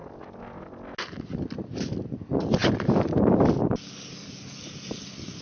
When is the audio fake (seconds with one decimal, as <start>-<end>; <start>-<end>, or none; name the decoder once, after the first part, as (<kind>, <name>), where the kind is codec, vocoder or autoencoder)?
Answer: none